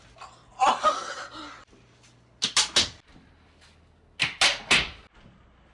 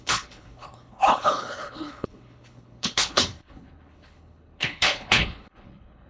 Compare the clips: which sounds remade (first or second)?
second